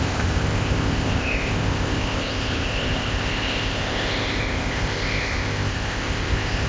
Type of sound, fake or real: fake